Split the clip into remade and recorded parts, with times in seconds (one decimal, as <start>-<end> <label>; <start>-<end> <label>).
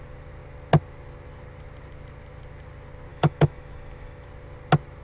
0.0-3.1 recorded; 3.1-4.3 remade; 4.3-5.0 recorded